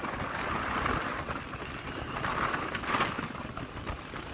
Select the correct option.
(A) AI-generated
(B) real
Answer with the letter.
B